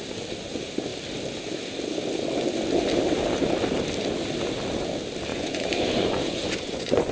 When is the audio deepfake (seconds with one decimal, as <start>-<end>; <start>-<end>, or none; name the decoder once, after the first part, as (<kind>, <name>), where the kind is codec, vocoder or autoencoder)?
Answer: 5.3-7.1 (vocoder, Vocos)

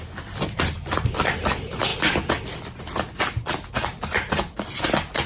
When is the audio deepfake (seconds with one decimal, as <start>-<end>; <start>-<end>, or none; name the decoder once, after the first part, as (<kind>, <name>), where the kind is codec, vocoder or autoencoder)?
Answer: 1.9-2.8 (vocoder, BigVGAN v2)

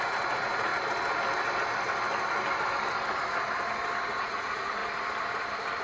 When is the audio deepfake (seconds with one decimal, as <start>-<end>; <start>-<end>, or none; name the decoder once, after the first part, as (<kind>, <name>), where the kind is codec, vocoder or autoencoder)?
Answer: 0.0-0.7 (vocoder, Vocos); 4.2-4.8

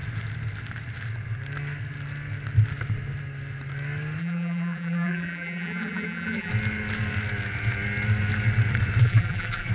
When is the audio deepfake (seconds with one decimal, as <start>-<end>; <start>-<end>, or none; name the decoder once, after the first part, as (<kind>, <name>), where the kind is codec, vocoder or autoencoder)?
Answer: 4.2-6.5 (vocoder, BigVGAN v2); 9.0-9.7